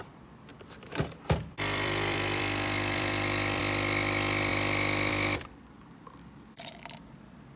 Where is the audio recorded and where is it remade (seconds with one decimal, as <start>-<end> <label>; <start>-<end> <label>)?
0.0-0.5 recorded; 0.5-3.6 remade; 3.6-7.6 recorded

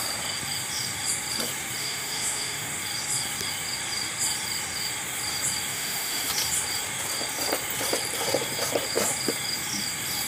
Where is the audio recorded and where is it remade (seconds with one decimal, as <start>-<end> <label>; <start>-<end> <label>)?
0.0-1.8 recorded; 1.8-2.8 remade; 2.8-5.7 recorded; 5.7-6.3 remade; 6.3-10.3 recorded

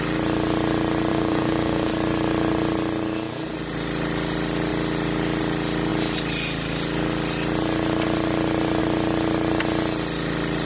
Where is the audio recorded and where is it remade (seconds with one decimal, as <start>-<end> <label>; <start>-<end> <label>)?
0.0-1.1 recorded; 1.1-1.9 remade; 1.9-10.7 recorded

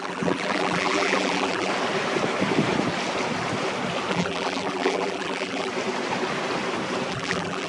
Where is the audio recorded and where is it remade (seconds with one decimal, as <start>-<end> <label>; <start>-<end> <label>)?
0.0-1.7 remade; 1.7-4.1 recorded; 4.1-5.7 remade; 5.7-7.1 recorded; 7.1-7.7 remade

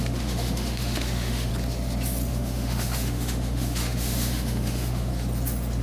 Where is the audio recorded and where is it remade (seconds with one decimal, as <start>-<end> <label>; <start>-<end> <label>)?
0.0-1.5 remade; 1.5-2.3 recorded; 2.3-5.1 remade; 5.1-5.8 recorded

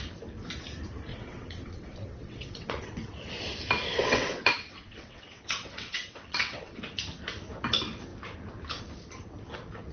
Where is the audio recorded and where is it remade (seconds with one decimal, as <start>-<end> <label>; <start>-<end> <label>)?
0.0-1.1 recorded; 1.1-3.1 remade; 3.1-3.9 recorded; 3.9-6.8 remade; 6.8-9.9 recorded